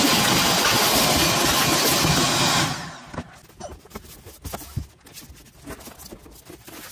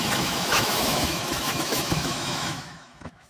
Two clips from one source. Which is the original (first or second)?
first